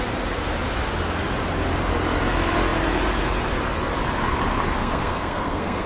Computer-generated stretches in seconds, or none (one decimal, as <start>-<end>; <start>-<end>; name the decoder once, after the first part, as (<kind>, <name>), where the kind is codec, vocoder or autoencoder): 4.8-5.9 (codec, SNAC)